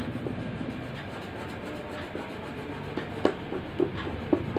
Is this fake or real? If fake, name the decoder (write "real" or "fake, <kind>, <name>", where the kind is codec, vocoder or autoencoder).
real